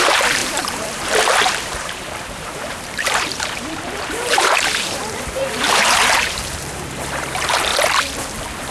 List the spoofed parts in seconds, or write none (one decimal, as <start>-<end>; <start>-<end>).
0.0-7.7